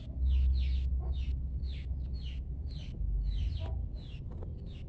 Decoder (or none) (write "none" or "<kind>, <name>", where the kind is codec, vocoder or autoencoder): none